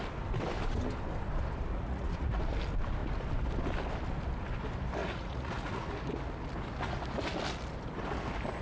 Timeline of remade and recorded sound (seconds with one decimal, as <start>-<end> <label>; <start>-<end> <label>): 0.0-1.7 recorded; 1.7-2.4 remade; 2.4-5.0 recorded; 5.0-5.9 remade; 5.9-8.6 recorded